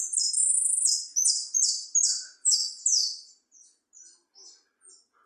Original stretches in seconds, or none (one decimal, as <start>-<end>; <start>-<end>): 0.0-5.3